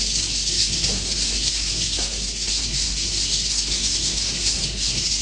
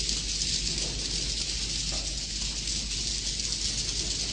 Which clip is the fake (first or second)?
first